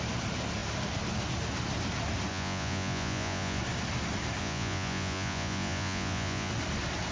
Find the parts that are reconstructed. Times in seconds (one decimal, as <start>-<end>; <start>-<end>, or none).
2.3-3.6; 4.4-6.5